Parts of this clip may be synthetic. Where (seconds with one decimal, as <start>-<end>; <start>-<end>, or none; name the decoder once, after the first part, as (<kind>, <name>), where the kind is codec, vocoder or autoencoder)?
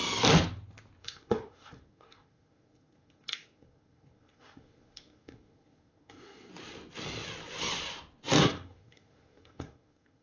1.0-6.5 (codec, SNAC); 8.4-10.2